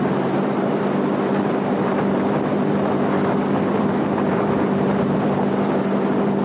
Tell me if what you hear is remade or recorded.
remade